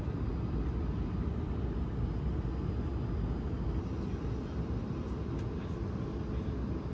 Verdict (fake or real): real